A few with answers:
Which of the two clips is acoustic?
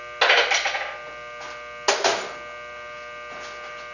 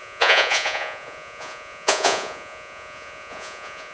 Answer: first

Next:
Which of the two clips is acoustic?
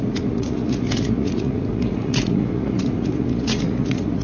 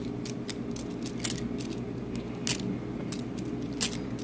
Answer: second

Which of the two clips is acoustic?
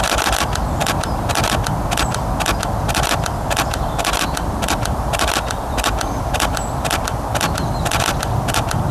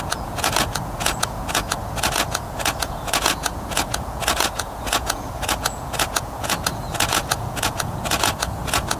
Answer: first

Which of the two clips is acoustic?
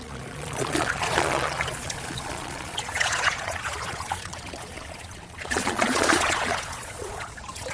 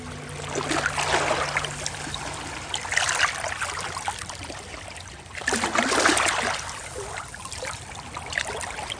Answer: second